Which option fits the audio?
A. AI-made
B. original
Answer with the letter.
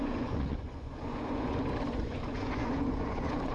A